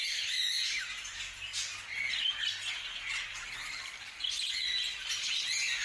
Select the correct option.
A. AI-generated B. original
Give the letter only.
B